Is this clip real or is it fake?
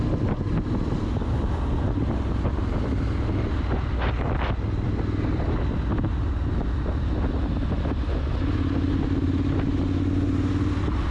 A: real